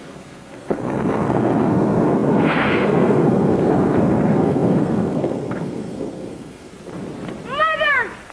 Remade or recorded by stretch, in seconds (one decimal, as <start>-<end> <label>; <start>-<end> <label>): 0.0-6.7 remade; 6.7-8.3 recorded